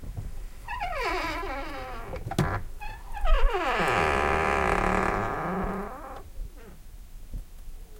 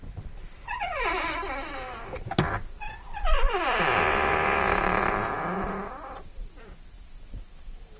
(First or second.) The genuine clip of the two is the first